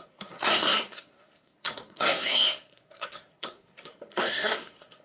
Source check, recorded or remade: remade